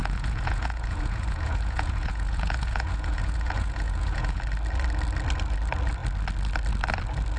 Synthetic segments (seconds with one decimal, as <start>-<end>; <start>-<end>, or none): 0.0-4.4